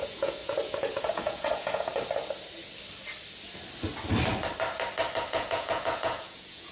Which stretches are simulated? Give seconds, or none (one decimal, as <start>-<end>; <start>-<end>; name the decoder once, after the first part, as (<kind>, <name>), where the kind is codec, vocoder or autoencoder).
0.0-1.9 (vocoder, Vocos); 5.3-6.7